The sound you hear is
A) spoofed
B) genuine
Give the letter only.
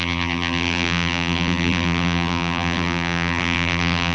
A